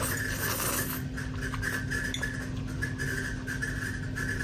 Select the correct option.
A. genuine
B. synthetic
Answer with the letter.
A